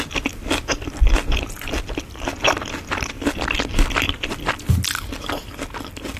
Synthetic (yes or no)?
no